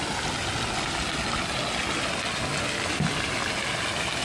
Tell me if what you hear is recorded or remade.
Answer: recorded